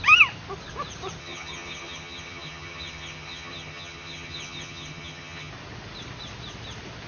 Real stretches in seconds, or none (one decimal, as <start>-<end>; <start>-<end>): 0.0-1.2; 5.5-7.1

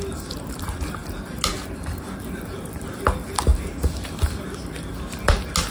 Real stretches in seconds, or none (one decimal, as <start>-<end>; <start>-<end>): 0.0-5.7

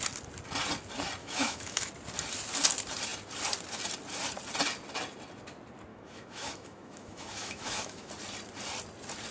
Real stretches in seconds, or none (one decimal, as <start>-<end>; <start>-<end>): 0.0-1.2; 1.9-5.9; 8.1-9.3

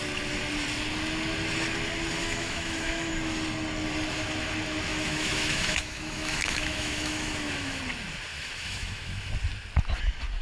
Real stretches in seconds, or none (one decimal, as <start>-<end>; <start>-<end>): 0.0-2.2; 3.1-4.9; 7.8-8.3; 9.3-10.4

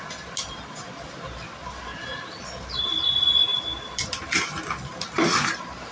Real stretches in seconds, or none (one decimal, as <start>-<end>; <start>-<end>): 0.0-5.9